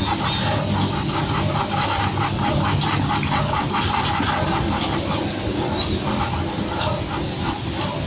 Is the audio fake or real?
real